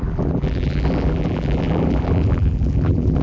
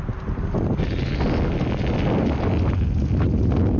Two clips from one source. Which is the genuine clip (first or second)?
second